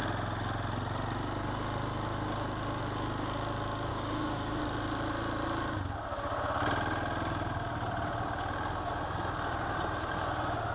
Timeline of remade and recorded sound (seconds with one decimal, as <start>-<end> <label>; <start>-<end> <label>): 0.0-3.9 recorded; 3.9-4.6 remade; 4.6-10.7 recorded